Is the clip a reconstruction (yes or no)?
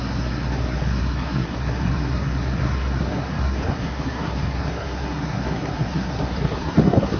yes